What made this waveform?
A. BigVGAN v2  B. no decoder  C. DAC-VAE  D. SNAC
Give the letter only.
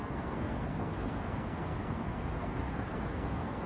D